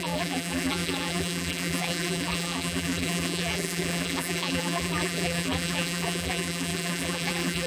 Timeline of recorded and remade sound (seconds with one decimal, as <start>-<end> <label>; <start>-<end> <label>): 0.0-7.7 remade